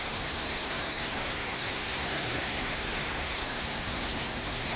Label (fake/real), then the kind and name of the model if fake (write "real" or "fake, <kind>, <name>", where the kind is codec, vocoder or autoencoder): fake, codec, SNAC